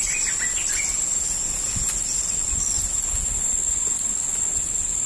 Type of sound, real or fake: real